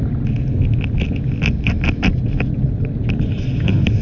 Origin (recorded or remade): recorded